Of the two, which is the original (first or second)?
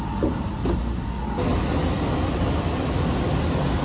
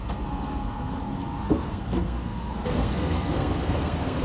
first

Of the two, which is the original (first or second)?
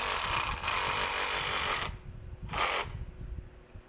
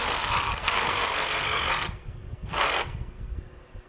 first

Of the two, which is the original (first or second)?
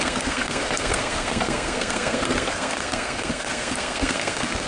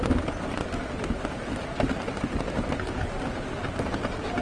second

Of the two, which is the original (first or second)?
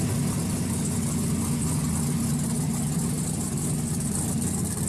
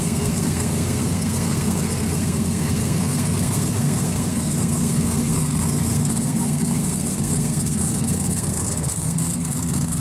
first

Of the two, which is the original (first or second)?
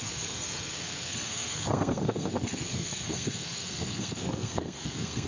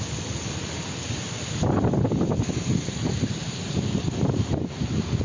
second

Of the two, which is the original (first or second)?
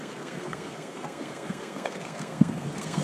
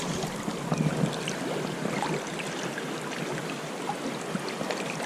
second